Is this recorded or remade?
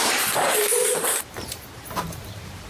remade